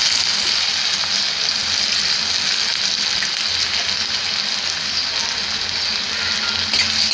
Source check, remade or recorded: recorded